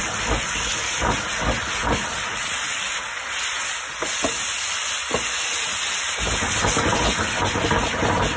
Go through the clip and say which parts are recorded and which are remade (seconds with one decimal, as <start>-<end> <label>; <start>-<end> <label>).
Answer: 0.0-8.4 recorded